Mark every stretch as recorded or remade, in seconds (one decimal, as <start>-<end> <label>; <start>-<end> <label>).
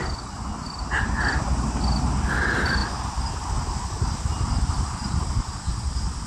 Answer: 0.0-6.3 recorded